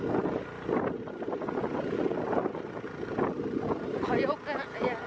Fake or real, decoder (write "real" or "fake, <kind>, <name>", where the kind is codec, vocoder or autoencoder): real